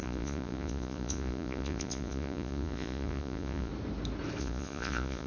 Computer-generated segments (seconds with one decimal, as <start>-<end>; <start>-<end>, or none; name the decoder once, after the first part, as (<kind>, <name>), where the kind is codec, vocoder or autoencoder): 0.0-3.7 (vocoder, Vocos); 4.4-5.3